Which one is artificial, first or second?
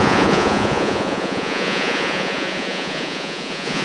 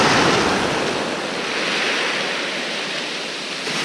first